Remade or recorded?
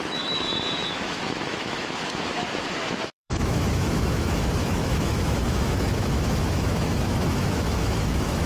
remade